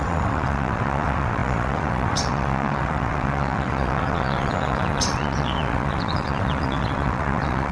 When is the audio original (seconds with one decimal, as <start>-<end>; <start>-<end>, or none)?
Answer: none